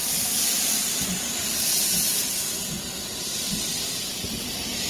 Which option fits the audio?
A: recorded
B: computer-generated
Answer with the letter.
A